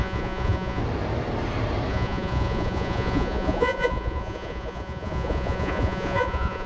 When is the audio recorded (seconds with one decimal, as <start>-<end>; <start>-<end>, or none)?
0.8-1.9